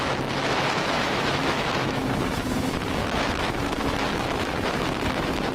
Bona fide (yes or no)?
no